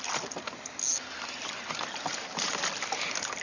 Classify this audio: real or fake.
real